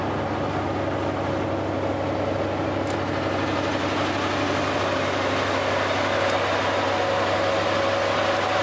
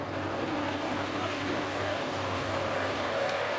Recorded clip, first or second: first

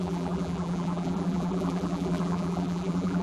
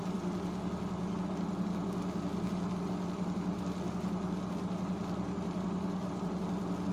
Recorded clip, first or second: second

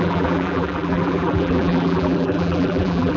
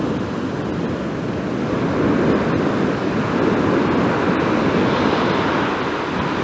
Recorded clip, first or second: second